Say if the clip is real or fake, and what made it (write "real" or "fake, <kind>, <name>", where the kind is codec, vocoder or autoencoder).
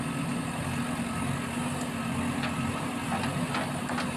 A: real